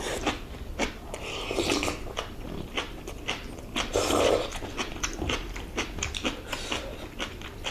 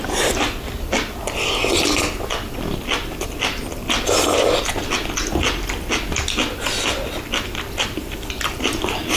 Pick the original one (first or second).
second